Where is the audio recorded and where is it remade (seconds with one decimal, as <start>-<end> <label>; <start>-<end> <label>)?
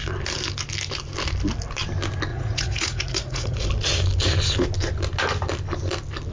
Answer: 0.0-2.3 recorded; 2.3-3.6 remade; 3.6-6.3 recorded